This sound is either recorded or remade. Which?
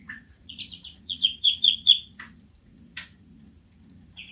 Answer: remade